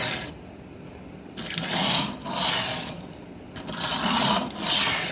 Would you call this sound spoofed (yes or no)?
no